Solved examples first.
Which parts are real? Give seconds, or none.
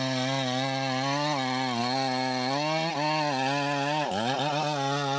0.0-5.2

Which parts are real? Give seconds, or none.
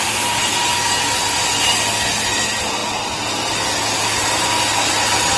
0.0-5.4